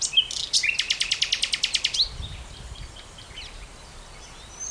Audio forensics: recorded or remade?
recorded